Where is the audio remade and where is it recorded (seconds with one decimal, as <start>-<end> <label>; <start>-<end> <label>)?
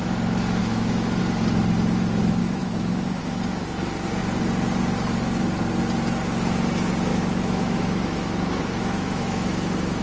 0.0-0.6 recorded; 0.6-1.2 remade; 1.2-2.4 recorded; 2.4-3.2 remade; 3.2-7.1 recorded; 7.1-10.0 remade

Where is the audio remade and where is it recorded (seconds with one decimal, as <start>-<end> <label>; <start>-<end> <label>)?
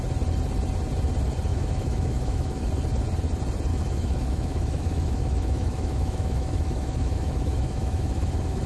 0.0-1.5 recorded; 1.5-2.7 remade; 2.7-3.7 recorded; 3.7-8.7 remade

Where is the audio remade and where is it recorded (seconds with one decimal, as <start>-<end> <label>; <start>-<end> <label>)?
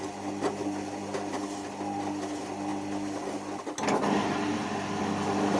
0.0-5.6 recorded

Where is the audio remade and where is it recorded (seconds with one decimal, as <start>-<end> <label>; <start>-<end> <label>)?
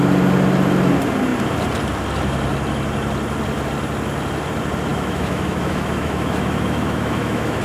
0.0-4.9 recorded; 4.9-7.6 remade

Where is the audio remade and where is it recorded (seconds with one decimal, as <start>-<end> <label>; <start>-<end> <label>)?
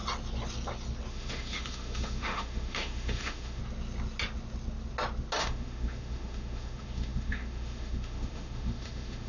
0.0-1.1 recorded; 1.1-3.6 remade; 3.6-5.4 recorded; 5.4-9.3 remade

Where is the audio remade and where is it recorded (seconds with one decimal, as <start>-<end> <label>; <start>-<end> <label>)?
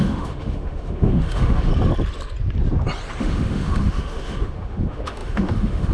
0.0-1.7 remade; 1.7-3.2 recorded; 3.2-5.9 remade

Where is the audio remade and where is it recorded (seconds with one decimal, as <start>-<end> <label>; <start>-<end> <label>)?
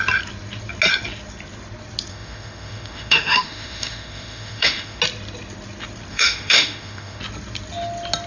0.0-2.1 recorded; 2.1-5.0 remade; 5.0-6.1 recorded; 6.1-7.2 remade; 7.2-8.3 recorded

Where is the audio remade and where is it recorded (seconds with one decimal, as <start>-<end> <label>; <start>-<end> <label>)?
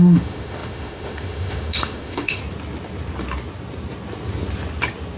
0.0-2.4 remade; 2.4-5.2 recorded